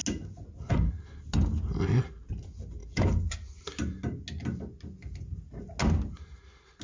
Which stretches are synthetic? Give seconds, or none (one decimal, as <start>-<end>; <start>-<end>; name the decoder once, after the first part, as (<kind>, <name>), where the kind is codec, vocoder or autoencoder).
none